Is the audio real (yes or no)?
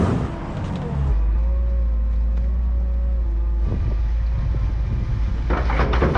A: yes